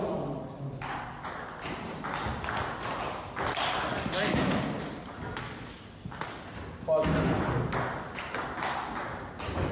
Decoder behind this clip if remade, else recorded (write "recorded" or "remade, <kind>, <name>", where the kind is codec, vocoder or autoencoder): recorded